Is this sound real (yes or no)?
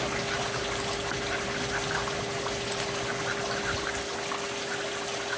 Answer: yes